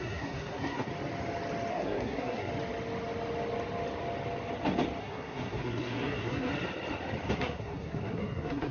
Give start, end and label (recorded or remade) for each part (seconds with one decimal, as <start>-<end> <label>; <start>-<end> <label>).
0.0-0.9 remade; 0.9-1.7 recorded; 1.7-2.5 remade; 2.5-5.0 recorded; 5.0-6.5 remade; 6.5-7.3 recorded; 7.3-8.7 remade